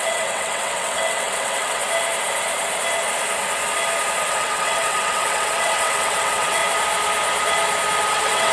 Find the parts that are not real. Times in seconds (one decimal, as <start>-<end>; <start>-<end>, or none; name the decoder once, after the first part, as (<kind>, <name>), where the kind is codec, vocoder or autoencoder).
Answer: 0.0-1.8 (vocoder, WaveNeXt); 4.3-6.6; 8.1-8.5